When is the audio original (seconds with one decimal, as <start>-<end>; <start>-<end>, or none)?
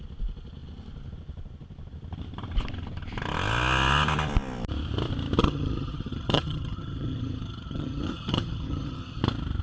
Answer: 0.0-5.4; 9.2-9.6